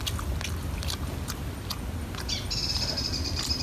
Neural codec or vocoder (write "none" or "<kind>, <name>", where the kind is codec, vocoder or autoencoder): none